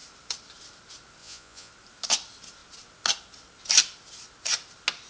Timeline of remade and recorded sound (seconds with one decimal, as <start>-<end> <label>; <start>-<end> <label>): 0.0-1.2 recorded; 1.2-1.7 remade; 1.7-5.1 recorded